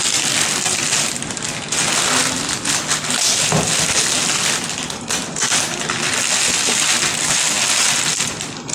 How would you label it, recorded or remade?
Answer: recorded